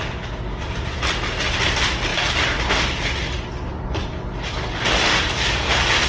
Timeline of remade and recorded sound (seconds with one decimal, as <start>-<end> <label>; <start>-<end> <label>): 0.0-6.1 recorded